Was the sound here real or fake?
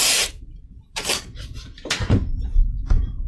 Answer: fake